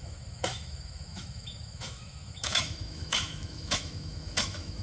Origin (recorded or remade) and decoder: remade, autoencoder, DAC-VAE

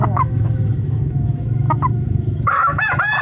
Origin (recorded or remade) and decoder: remade, autoencoder, DAC-VAE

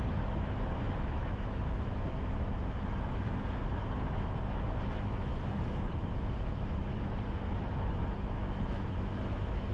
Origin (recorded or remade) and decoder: remade, autoencoder, DAC-VAE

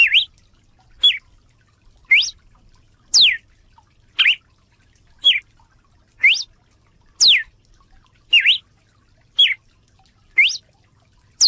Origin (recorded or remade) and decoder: recorded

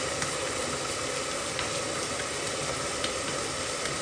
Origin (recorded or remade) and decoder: recorded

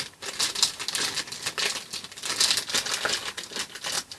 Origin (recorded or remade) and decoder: recorded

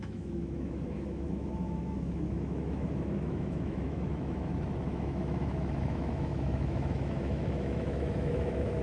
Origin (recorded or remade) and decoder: remade, autoencoder, DAC-VAE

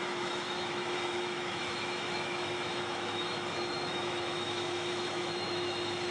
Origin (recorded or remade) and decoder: remade, autoencoder, DAC-VAE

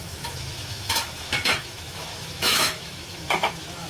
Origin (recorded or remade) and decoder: remade, autoencoder, DAC-VAE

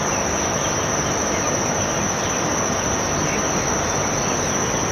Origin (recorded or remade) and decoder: recorded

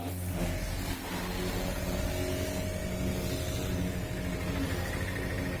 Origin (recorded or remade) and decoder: recorded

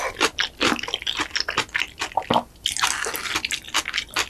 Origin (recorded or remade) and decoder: recorded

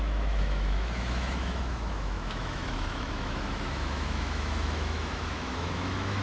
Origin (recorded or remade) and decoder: remade, autoencoder, DAC-VAE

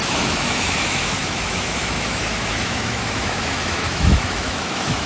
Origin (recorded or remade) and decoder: remade, autoencoder, DAC-VAE